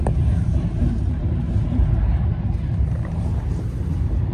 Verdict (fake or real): fake